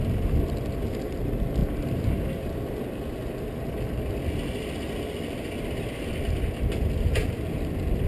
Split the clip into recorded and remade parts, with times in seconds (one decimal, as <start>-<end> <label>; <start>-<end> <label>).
0.0-7.2 recorded; 7.2-8.1 remade